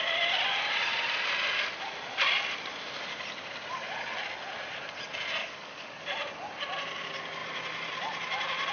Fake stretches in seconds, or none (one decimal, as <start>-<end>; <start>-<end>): 5.4-6.0